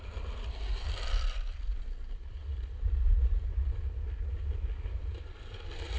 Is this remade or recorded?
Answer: recorded